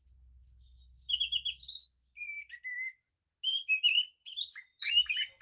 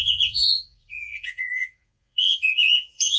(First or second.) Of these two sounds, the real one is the first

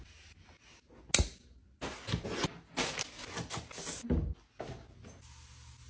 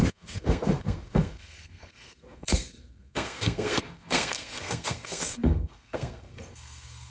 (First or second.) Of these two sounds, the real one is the first